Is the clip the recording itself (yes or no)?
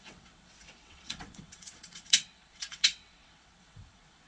no